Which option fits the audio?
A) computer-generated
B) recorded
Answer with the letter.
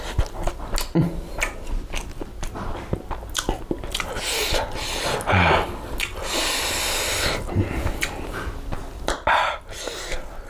B